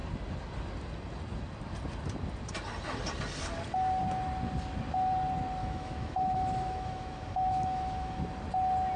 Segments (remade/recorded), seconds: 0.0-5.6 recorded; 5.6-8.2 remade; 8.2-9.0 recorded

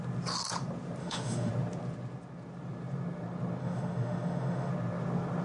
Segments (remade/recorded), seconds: 0.0-1.0 recorded; 1.0-1.5 remade; 1.5-3.6 recorded; 3.6-4.7 remade; 4.7-5.4 recorded

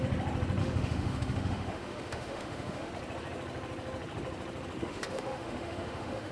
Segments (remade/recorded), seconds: 0.0-0.6 recorded; 0.6-2.9 remade; 2.9-4.8 recorded; 4.8-6.3 remade